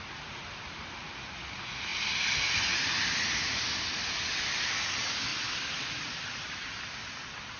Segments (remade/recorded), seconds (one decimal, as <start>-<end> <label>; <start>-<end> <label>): 0.0-1.9 recorded; 1.9-4.4 remade; 4.4-5.3 recorded; 5.3-7.6 remade